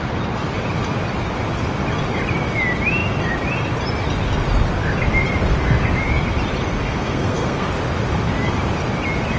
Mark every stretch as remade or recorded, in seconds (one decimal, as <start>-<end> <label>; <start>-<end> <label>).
0.0-6.8 recorded; 6.8-7.7 remade; 7.7-9.4 recorded